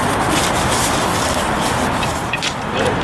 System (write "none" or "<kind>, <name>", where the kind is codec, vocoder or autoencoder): vocoder, BigVGAN v2